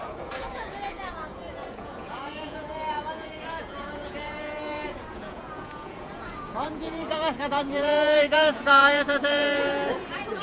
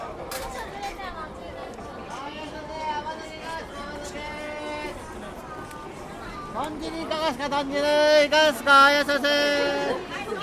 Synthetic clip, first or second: first